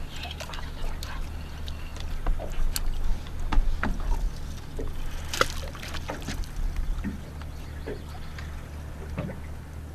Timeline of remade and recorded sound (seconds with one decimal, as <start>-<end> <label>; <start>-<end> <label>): 0.0-9.9 recorded